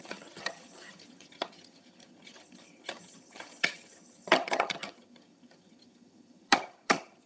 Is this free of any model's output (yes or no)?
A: no